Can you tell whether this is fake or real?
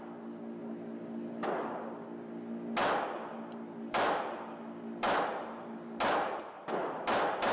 real